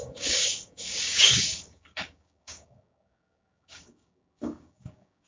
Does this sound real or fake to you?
fake